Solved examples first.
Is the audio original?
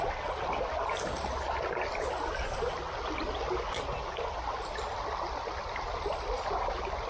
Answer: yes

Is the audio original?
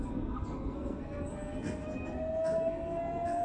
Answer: no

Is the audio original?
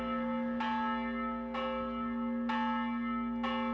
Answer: yes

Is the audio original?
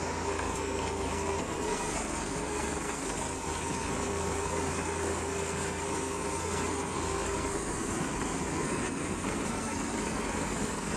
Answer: no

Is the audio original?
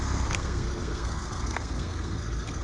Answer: no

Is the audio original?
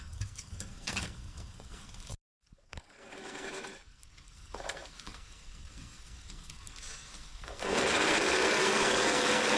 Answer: no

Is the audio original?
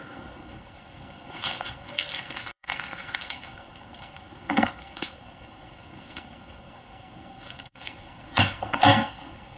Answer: no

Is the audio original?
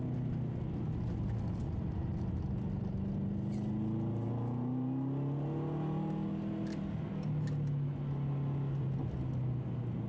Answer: yes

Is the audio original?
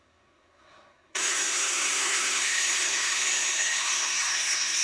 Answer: no